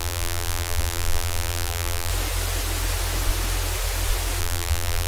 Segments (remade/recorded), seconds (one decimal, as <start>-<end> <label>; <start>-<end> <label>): 0.0-2.1 remade; 2.1-4.4 recorded; 4.4-5.1 remade